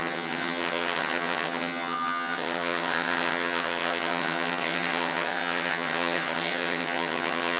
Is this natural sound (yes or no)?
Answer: no